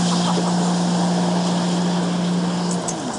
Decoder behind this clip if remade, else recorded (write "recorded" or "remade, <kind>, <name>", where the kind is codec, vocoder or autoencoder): recorded